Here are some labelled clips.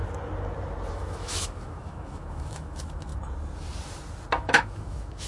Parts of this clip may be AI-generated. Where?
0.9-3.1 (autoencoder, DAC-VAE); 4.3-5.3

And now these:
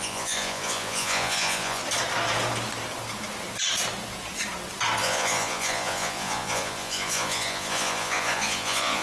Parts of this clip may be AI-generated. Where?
0.0-1.8 (vocoder, Vocos); 5.0-9.0

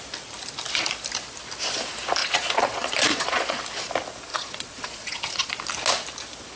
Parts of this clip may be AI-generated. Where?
2.2-3.6 (vocoder, Vocos); 4.3-5.5

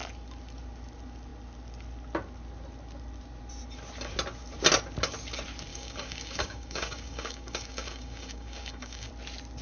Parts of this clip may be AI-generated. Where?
5.7-9.1 (codec, DAC)

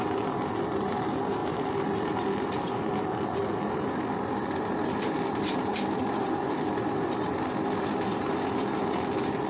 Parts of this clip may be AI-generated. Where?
none

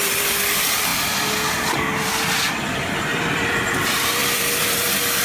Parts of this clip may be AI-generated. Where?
0.0-0.9 (vocoder, BigVGAN v2); 2.6-5.2

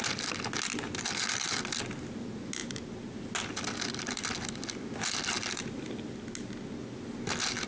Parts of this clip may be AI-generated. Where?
none